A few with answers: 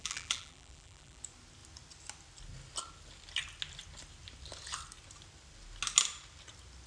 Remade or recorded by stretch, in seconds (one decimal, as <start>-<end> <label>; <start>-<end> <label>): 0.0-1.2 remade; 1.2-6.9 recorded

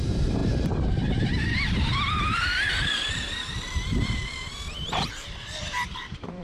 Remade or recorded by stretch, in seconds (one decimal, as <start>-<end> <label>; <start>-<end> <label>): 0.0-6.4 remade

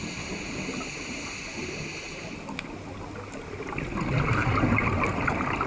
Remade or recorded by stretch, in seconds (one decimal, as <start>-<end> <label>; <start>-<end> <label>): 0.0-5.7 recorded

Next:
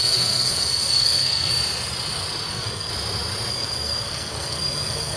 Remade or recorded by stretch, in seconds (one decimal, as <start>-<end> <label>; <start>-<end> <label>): 0.0-1.5 remade; 1.5-2.5 recorded; 2.5-2.9 remade; 2.9-3.5 recorded; 3.5-5.2 remade

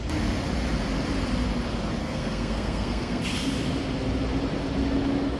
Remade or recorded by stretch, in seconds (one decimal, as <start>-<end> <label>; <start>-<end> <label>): 0.0-2.0 recorded; 2.0-3.2 remade; 3.2-5.4 recorded

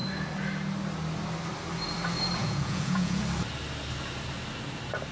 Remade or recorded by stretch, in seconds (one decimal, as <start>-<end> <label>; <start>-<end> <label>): 0.0-2.4 recorded; 2.4-3.2 remade; 3.2-5.1 recorded